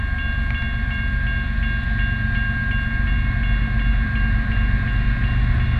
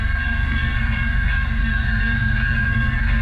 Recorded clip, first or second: first